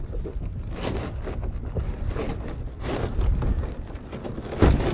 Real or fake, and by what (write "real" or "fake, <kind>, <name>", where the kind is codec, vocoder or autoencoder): real